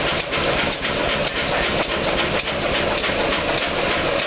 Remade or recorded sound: recorded